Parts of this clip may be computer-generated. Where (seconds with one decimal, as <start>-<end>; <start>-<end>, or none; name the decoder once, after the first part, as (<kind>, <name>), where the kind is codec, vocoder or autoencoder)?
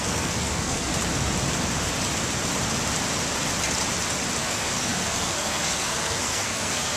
0.0-0.9 (codec, SNAC); 4.4-7.0